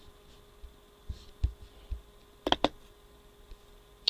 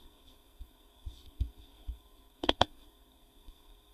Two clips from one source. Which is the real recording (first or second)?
first